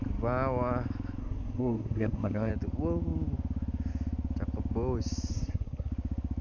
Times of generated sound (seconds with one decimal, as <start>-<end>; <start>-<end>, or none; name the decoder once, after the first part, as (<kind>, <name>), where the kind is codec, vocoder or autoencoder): 1.2-2.5 (codec, SNAC); 5.3-5.9